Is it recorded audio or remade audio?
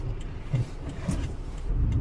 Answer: remade